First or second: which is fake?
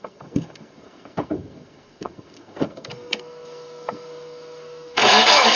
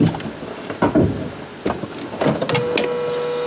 first